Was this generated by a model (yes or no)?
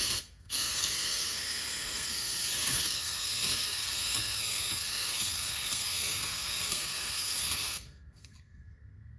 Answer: yes